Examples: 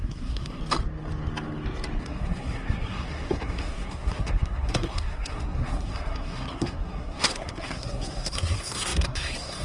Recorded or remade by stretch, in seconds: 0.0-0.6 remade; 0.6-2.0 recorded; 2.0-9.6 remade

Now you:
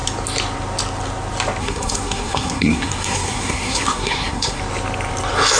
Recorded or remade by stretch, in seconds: 0.0-1.6 recorded; 1.6-4.6 remade; 4.6-5.6 recorded

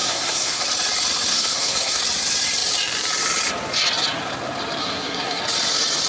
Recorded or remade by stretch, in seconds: 0.0-0.6 remade; 0.6-1.3 recorded; 1.3-2.0 remade; 2.0-4.8 recorded; 4.8-5.4 remade; 5.4-6.1 recorded

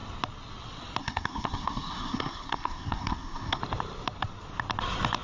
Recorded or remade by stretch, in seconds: 0.0-1.0 recorded; 1.0-3.6 remade; 3.6-5.2 recorded

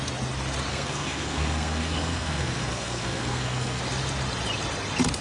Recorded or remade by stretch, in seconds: 0.0-0.7 recorded; 0.7-3.8 remade; 3.8-5.2 recorded

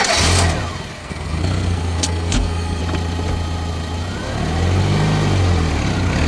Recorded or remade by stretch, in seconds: 0.0-1.0 recorded; 1.0-2.8 remade; 2.8-6.3 recorded